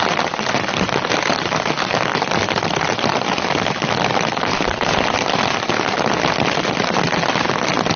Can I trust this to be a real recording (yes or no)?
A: yes